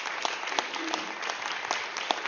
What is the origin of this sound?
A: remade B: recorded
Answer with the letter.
B